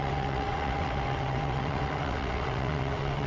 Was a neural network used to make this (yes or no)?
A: yes